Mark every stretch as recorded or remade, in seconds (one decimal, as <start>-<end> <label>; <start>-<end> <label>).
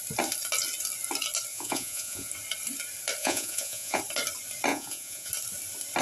0.0-1.5 recorded; 1.5-2.3 remade; 2.3-3.2 recorded; 3.2-4.0 remade; 4.0-4.7 recorded; 4.7-5.3 remade; 5.3-6.0 recorded